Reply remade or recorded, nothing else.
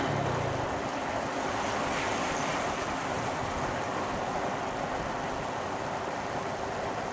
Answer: recorded